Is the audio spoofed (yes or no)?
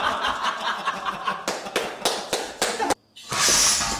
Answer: no